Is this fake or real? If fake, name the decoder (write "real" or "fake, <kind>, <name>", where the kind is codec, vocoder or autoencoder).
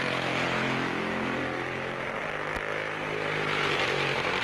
real